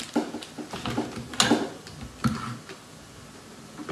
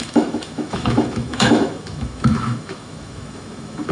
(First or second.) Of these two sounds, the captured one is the first